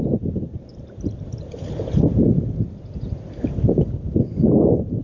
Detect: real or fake real